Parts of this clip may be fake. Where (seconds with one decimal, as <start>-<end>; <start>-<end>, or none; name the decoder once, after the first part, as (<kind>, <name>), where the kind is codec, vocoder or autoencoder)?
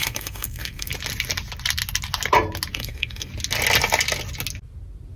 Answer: 0.0-0.9 (codec, SNAC); 2.7-3.3